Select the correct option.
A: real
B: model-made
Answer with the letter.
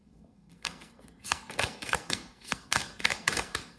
B